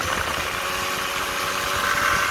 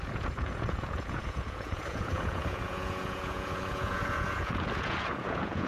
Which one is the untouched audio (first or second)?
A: first